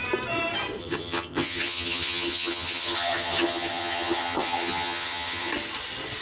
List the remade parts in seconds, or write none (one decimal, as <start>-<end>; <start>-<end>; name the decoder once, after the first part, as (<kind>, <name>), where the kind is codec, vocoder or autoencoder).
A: 0.8-5.5 (vocoder, HiFi-GAN)